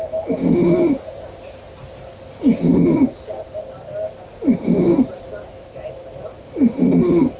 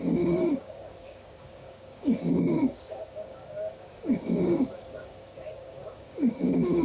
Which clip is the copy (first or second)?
second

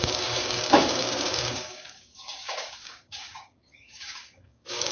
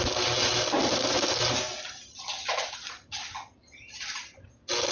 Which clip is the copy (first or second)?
first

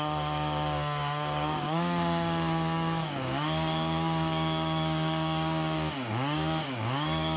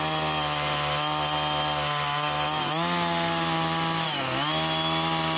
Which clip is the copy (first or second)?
first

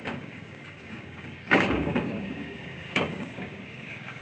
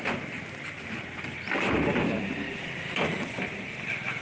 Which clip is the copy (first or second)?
first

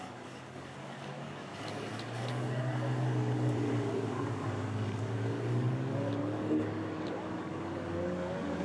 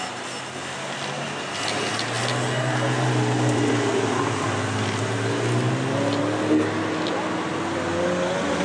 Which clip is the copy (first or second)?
first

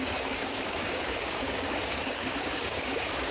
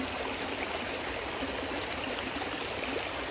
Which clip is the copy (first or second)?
first